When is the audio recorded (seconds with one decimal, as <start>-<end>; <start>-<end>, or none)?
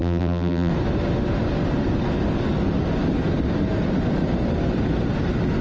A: 0.7-5.6